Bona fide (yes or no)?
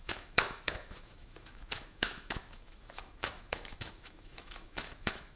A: no